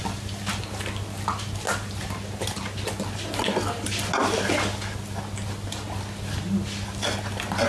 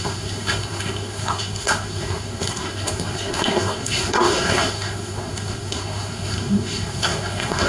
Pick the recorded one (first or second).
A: first